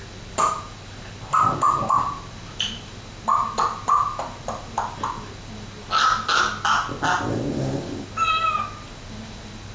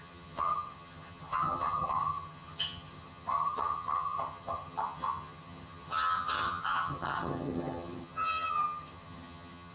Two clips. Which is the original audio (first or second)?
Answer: first